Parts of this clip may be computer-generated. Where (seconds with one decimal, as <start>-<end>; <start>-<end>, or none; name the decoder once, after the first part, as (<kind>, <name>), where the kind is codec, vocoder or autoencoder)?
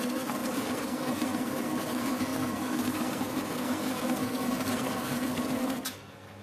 0.0-6.4 (codec, SNAC)